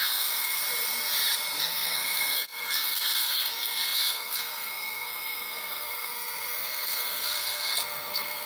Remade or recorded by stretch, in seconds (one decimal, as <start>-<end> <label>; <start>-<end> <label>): 0.0-0.6 remade; 0.6-1.6 recorded; 1.6-8.5 remade